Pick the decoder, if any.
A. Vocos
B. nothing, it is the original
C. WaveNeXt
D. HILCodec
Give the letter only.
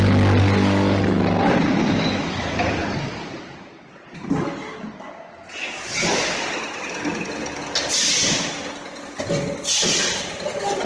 B